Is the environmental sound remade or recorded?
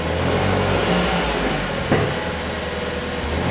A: recorded